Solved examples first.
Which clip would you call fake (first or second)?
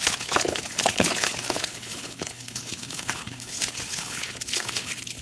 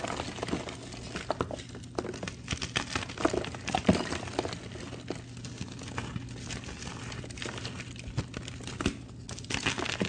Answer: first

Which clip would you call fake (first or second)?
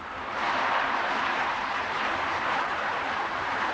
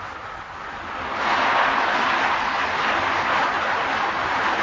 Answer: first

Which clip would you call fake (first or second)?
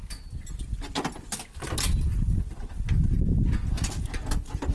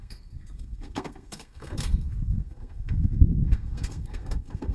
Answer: second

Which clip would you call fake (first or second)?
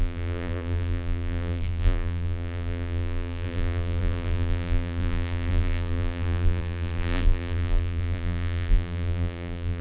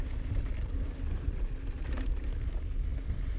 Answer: first